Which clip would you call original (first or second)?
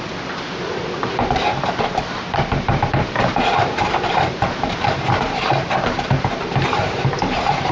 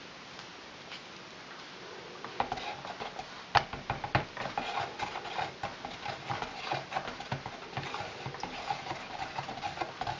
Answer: second